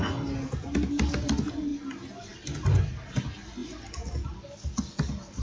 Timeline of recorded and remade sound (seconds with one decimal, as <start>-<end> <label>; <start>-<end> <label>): 0.0-5.4 recorded